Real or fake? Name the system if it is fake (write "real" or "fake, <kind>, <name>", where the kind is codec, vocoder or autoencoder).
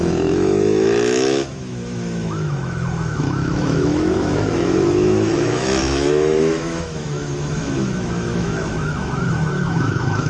fake, autoencoder, DAC-VAE